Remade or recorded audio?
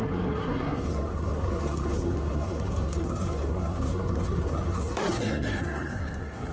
remade